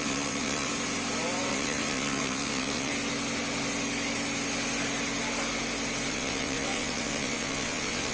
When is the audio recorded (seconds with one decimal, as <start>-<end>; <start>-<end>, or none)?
0.7-1.5; 2.9-6.1